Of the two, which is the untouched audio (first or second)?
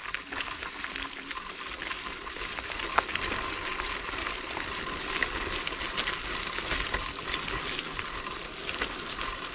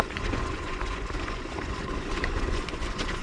first